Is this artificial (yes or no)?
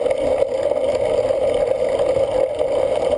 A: no